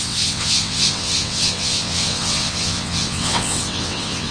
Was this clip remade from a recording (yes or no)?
yes